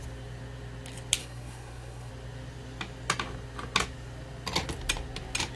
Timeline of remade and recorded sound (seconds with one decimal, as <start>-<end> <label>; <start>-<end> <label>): 0.0-1.2 recorded; 1.2-2.1 remade; 2.1-5.6 recorded